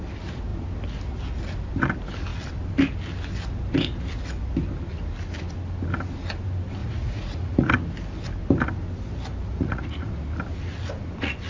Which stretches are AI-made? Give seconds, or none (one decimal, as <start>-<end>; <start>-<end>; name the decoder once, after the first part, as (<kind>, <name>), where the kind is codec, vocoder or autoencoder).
6.8-7.7 (vocoder, Vocos); 9.5-10.1